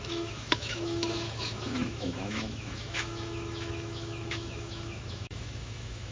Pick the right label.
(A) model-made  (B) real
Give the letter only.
A